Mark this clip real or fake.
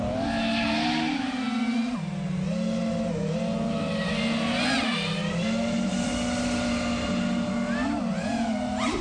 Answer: real